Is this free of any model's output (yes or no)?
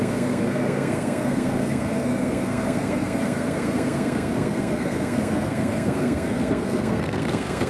no